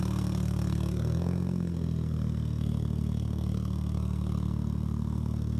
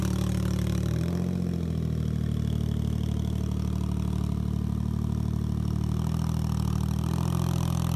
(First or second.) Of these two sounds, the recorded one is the second